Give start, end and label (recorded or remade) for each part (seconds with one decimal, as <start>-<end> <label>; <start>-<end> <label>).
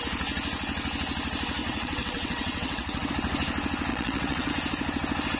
0.0-1.6 recorded; 1.6-3.1 remade; 3.1-3.9 recorded; 3.9-4.5 remade; 4.5-5.4 recorded